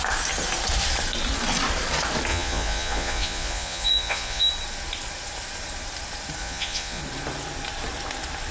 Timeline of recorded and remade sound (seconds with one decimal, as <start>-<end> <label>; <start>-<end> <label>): 0.0-2.3 recorded; 2.3-4.5 remade; 4.5-6.4 recorded; 6.4-7.0 remade; 7.0-8.5 recorded